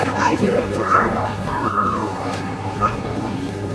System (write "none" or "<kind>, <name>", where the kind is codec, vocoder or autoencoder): codec, SNAC